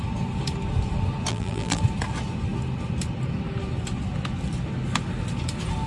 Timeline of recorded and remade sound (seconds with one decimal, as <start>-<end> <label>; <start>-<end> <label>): 0.0-1.3 recorded; 1.3-1.8 remade; 1.8-5.9 recorded